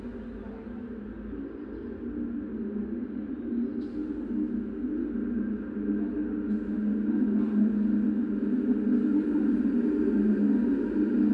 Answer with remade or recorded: recorded